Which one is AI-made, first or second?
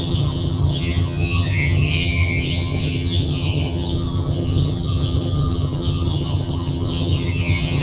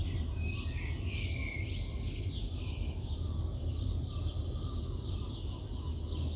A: first